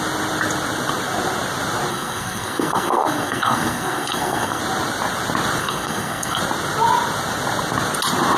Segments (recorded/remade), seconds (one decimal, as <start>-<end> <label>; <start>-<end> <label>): 0.0-1.9 recorded; 1.9-4.6 remade; 4.6-5.6 recorded; 5.6-6.4 remade; 6.4-8.4 recorded